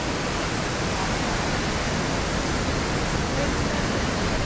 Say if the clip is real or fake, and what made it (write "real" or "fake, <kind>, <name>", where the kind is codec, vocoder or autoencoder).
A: real